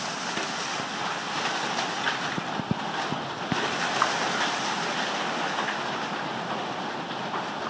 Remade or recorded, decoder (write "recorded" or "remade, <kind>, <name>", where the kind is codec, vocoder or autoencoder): recorded